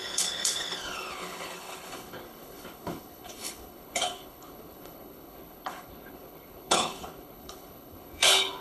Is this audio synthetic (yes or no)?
yes